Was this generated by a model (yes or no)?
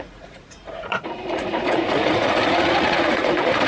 yes